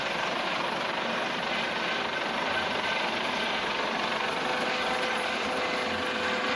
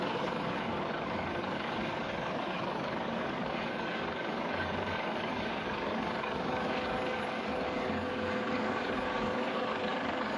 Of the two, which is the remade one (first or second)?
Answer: second